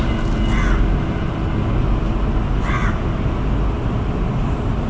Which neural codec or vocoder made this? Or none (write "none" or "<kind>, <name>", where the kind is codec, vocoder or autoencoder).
none